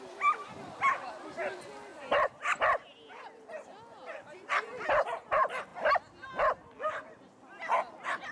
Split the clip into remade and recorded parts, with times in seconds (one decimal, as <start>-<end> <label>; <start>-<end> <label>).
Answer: 0.0-1.9 recorded; 1.9-2.4 remade; 2.4-8.3 recorded